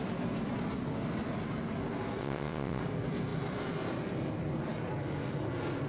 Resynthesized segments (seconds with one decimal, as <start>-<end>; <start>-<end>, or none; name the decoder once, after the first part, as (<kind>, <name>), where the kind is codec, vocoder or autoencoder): 2.2-2.8 (vocoder, WaveNeXt)